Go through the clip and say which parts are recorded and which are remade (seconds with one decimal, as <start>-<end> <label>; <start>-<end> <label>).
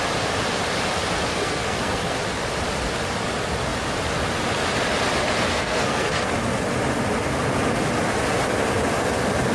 0.0-1.3 recorded; 1.3-2.2 remade; 2.2-5.5 recorded; 5.5-6.3 remade; 6.3-9.5 recorded